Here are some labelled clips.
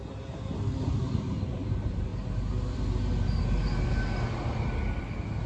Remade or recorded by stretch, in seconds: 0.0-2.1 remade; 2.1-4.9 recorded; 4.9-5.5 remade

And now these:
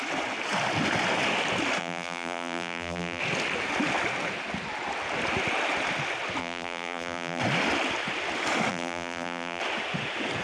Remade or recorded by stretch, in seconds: 0.0-1.8 recorded; 1.8-3.2 remade; 3.2-6.4 recorded; 6.4-7.4 remade; 7.4-8.7 recorded; 8.7-9.6 remade; 9.6-10.4 recorded

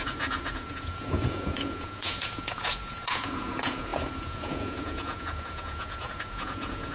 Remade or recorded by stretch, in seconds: 0.0-6.9 remade

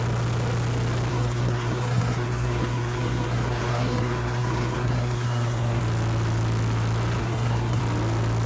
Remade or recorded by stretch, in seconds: 0.0-1.1 recorded; 1.1-5.8 remade; 5.8-7.2 recorded; 7.2-7.8 remade; 7.8-8.5 recorded

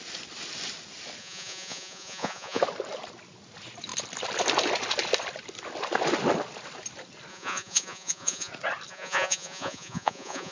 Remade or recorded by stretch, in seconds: 0.0-1.2 recorded; 1.2-2.6 remade; 2.6-7.3 recorded; 7.3-8.5 remade; 8.5-8.9 recorded; 8.9-10.5 remade